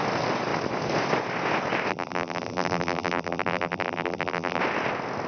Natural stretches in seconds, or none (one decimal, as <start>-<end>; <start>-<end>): 0.0-1.9; 4.6-5.3

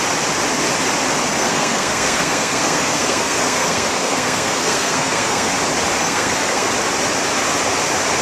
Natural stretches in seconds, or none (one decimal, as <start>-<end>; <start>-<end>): 0.0-1.3; 5.5-6.0; 6.7-8.2

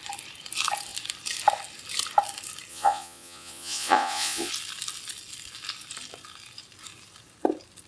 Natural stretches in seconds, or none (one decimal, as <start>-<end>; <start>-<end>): 0.0-2.7; 4.5-7.9

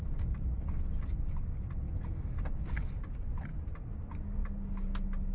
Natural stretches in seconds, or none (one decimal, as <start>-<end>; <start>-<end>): 0.0-5.3

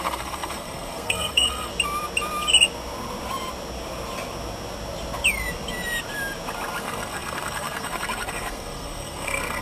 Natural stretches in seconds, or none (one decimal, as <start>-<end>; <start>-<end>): 1.7-6.8

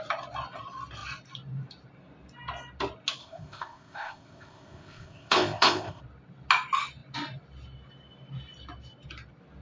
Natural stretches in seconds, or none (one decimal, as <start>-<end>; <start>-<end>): 0.0-3.2; 6.0-9.6

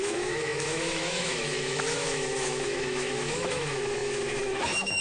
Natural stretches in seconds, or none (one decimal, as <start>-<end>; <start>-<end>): none